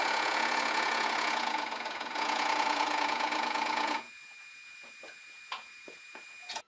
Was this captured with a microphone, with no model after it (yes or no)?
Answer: no